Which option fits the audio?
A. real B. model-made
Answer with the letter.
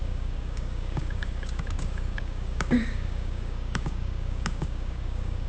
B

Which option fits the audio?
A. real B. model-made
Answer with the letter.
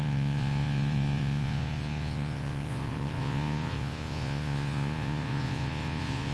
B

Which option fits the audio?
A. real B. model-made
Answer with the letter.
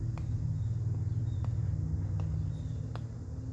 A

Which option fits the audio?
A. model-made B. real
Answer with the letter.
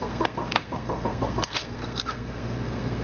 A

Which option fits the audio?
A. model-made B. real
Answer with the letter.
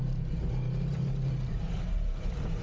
A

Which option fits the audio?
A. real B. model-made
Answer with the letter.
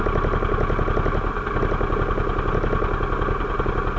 A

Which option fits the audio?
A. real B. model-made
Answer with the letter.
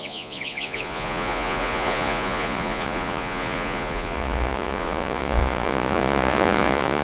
B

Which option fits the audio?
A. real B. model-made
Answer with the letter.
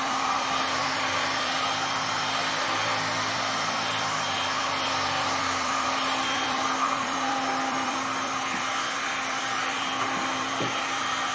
B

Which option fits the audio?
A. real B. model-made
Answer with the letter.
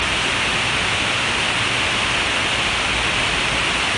A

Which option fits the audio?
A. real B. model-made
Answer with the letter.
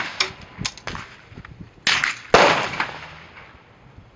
A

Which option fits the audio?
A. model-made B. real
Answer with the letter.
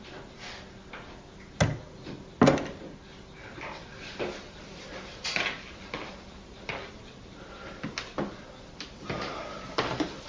B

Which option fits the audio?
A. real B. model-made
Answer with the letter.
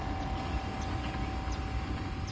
A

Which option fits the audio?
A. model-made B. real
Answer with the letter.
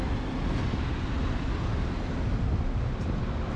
B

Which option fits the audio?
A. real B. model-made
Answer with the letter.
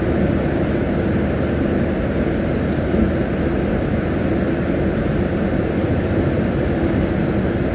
A